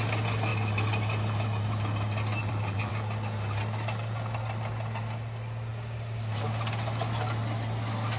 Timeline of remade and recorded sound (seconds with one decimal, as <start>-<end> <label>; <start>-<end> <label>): 0.0-2.4 recorded; 2.4-2.9 remade; 2.9-8.2 recorded